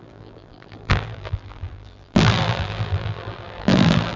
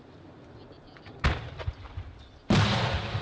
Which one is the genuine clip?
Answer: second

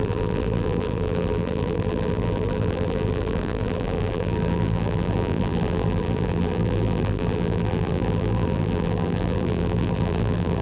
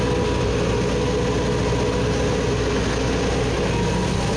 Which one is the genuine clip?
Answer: second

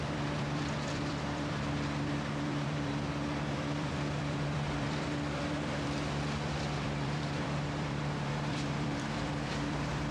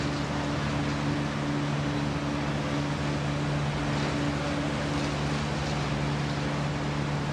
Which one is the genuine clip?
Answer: second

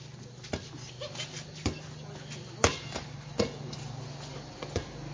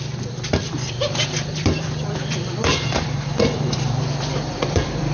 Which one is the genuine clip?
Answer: first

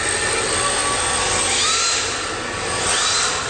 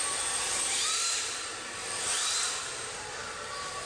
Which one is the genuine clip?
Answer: first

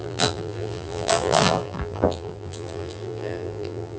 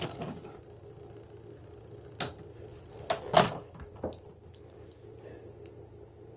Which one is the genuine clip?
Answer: second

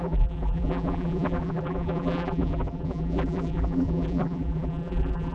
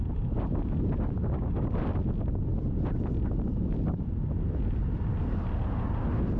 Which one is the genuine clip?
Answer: second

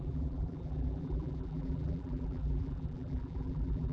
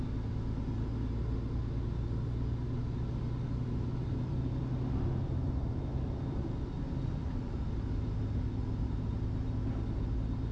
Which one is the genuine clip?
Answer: second